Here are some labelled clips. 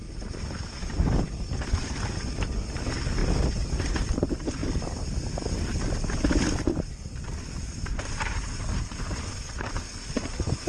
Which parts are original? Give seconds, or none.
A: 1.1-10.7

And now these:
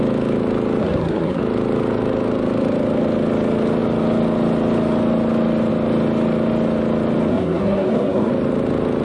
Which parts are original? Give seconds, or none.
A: 0.0-0.8; 1.4-7.3; 8.3-9.0

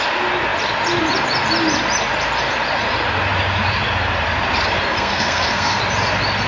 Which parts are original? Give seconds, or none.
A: 0.0-4.9; 5.8-6.5

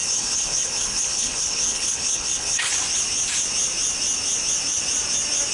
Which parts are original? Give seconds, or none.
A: 2.7-5.5